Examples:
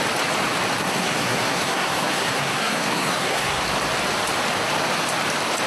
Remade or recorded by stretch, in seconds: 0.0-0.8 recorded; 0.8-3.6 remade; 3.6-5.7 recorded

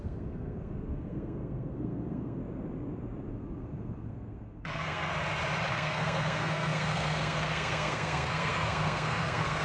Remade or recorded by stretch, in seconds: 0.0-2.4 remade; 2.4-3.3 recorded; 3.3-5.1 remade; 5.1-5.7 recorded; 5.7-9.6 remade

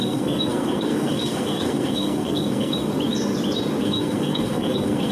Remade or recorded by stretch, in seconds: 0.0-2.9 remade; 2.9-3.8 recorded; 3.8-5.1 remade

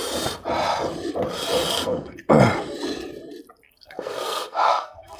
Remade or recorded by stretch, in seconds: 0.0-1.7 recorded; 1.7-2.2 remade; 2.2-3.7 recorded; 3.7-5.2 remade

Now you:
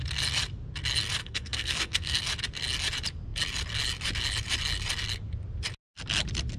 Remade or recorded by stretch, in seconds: 0.0-1.2 recorded; 1.2-2.2 remade; 2.2-6.6 recorded

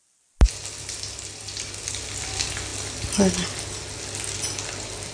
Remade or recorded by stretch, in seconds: 0.0-5.1 recorded

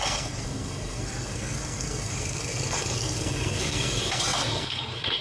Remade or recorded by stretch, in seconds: 0.0-5.2 remade